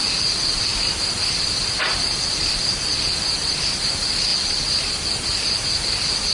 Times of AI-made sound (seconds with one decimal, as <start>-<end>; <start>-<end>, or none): 0.7-1.8; 4.3-4.8